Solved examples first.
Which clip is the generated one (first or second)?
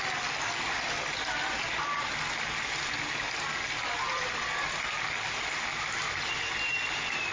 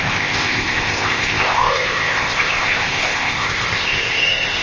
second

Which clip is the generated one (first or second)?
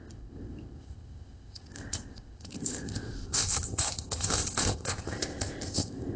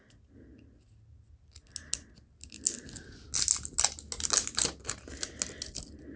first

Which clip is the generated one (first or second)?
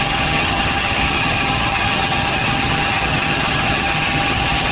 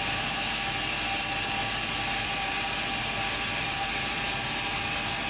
first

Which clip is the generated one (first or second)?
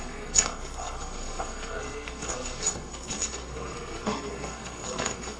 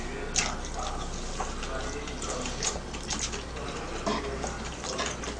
first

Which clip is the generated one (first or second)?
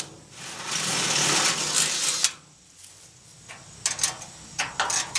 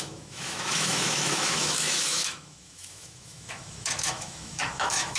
second